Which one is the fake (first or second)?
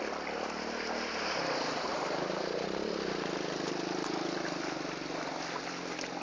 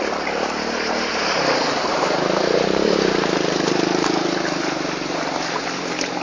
second